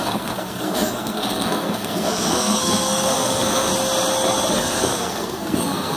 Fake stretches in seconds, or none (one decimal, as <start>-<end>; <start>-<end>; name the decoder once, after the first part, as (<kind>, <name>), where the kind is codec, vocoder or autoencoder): 0.0-3.7 (codec, SNAC); 4.5-6.0